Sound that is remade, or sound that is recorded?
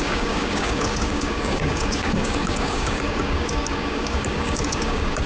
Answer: remade